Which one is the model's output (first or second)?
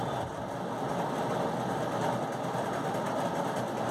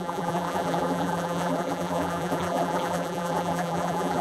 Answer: second